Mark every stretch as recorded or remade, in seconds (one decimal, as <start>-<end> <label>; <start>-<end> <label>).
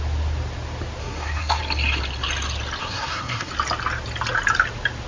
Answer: 0.0-1.0 recorded; 1.0-1.6 remade; 1.6-2.8 recorded; 2.8-3.5 remade; 3.5-5.1 recorded